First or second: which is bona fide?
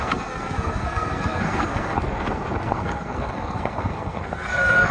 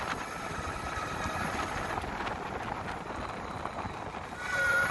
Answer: second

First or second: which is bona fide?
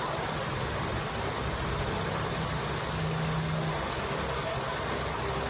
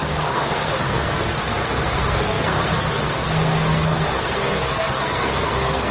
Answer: first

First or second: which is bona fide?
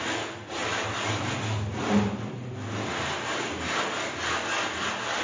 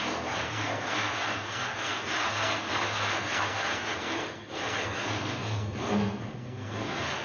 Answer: first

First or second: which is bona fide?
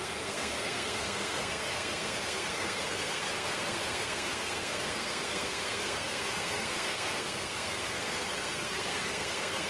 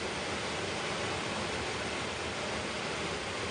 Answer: second